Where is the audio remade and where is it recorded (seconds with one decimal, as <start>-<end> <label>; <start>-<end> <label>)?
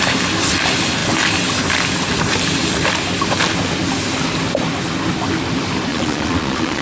0.0-5.9 recorded; 5.9-6.8 remade